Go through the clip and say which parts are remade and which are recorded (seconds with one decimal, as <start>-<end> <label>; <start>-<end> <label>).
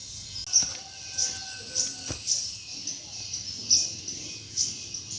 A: 0.0-5.2 recorded